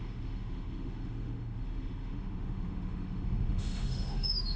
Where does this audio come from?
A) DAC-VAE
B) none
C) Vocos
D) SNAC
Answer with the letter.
A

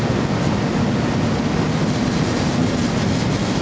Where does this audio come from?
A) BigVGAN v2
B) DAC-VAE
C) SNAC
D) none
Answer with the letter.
D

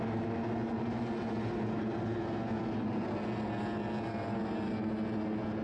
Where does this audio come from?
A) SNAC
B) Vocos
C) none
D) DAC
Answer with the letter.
C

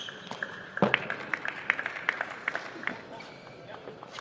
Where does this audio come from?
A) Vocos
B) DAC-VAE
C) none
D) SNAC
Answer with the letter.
C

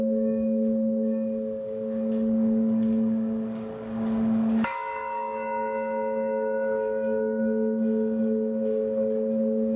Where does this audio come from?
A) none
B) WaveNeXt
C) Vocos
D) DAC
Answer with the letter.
D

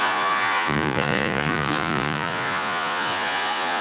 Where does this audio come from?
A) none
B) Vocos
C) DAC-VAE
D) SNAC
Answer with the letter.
B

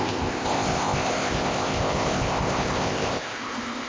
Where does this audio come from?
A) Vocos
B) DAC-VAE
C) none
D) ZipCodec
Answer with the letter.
D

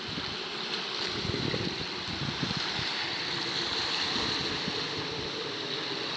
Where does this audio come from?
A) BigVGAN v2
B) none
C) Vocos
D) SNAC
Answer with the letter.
B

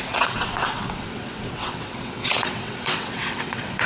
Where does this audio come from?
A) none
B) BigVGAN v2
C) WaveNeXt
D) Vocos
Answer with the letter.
C